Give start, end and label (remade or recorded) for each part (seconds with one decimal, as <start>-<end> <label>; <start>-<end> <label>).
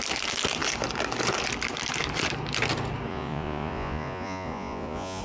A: 0.0-3.1 recorded; 3.1-5.2 remade